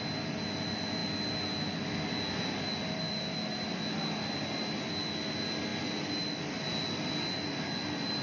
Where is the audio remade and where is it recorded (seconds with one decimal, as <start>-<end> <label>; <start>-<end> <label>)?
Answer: 0.0-8.2 recorded